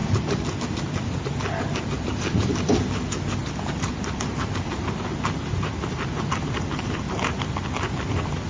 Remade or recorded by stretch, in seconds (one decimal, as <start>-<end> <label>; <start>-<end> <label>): 0.0-8.5 recorded